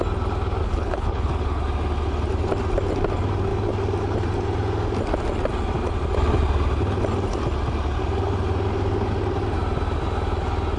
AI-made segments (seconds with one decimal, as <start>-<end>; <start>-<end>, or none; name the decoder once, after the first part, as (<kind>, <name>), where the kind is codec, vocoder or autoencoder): 0.6-1.6 (codec, HILCodec)